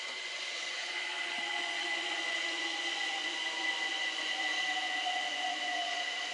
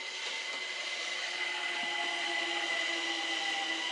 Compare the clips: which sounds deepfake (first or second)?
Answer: first